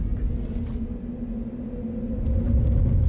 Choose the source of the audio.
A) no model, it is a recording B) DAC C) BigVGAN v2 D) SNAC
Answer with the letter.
A